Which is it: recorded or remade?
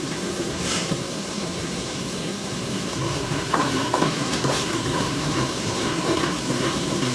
remade